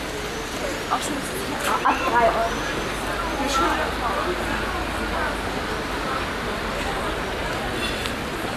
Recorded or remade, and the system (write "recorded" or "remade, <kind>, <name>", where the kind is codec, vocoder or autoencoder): recorded